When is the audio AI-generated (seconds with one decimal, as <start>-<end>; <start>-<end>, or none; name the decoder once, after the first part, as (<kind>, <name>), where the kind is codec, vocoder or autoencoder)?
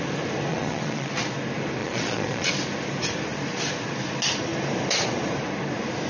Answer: 0.5-1.1 (vocoder, Vocos); 1.8-2.5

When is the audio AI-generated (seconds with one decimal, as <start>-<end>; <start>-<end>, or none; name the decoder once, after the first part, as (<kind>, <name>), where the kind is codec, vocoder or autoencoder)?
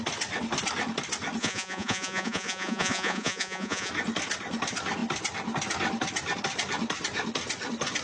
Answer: 1.4-3.9 (vocoder, Vocos)